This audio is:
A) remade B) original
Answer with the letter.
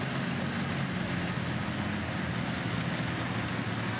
B